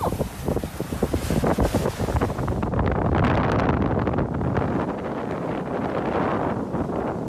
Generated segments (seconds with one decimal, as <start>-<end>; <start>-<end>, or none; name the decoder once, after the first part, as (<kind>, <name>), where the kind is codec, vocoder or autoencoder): none